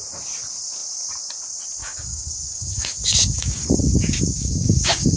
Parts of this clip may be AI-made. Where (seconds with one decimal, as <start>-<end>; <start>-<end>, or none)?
1.8-5.2